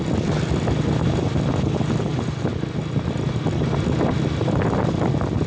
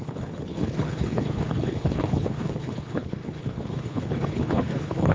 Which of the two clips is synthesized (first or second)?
second